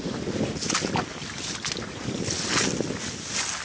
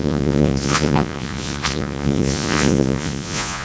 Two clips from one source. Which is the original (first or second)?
first